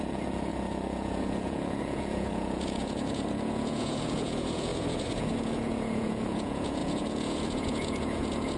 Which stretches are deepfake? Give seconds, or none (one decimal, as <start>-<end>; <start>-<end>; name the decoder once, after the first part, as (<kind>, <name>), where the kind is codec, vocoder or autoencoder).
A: 0.0-8.6 (vocoder, Vocos)